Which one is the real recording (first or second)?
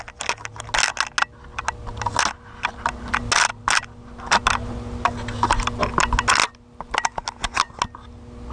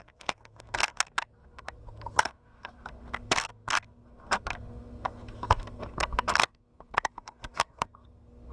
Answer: first